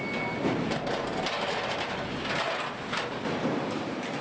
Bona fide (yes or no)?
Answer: yes